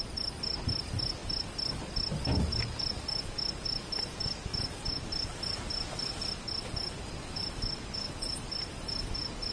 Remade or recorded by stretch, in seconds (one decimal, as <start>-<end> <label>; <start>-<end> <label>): 0.0-9.5 recorded